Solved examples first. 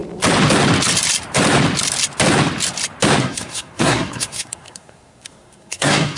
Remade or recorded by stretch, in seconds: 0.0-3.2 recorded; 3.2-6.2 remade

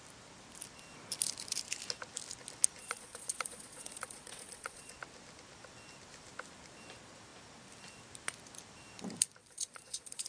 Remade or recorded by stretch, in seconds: 0.0-2.8 recorded; 2.8-4.9 remade; 4.9-9.4 recorded; 9.4-10.3 remade